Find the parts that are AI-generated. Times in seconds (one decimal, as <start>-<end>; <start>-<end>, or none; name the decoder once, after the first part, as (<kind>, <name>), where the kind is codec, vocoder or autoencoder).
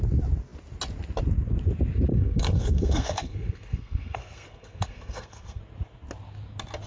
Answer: 2.1-5.6 (codec, SNAC)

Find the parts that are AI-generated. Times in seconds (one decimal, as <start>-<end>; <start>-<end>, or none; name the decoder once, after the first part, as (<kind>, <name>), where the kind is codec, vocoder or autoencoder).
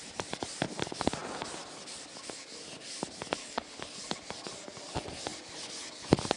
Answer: 3.4-3.9 (codec, HILCodec)